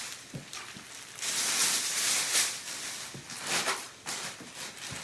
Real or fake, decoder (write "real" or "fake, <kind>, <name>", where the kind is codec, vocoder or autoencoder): real